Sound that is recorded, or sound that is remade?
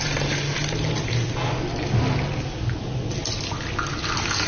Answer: recorded